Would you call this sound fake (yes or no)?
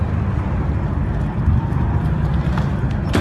no